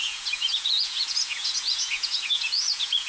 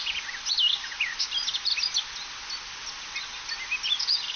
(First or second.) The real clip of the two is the second